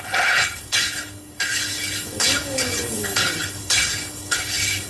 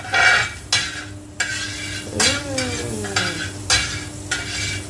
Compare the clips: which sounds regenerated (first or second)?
first